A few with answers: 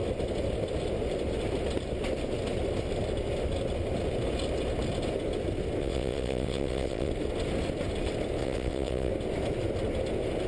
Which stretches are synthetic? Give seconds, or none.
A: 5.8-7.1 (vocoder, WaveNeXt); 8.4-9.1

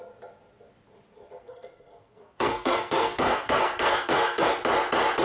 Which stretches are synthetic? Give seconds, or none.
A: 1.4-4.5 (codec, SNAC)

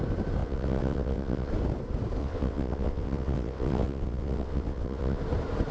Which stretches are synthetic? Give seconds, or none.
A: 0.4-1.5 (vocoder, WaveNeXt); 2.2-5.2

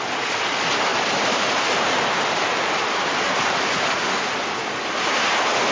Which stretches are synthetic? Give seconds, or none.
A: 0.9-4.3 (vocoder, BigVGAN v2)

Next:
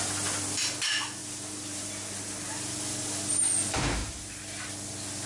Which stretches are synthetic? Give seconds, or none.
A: 1.2-2.1 (vocoder, BigVGAN v2)

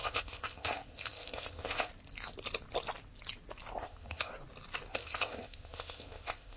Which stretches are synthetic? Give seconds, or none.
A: 0.0-1.9 (codec, ZipCodec); 3.8-4.3; 4.9-6.6